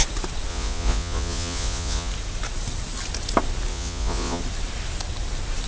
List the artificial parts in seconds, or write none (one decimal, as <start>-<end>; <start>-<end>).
0.5-2.1; 3.7-4.4